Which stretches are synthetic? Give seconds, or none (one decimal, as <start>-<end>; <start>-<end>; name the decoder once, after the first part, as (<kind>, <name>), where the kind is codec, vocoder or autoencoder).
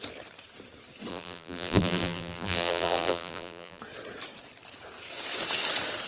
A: 1.1-3.8 (vocoder, BigVGAN v2)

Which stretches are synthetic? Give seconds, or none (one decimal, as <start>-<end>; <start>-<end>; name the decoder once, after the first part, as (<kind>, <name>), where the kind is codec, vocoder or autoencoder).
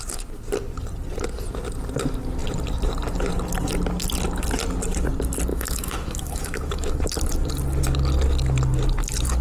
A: 5.5-7.0 (autoencoder, DAC-VAE)